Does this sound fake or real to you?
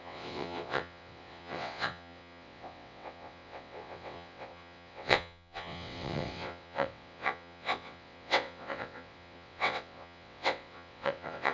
fake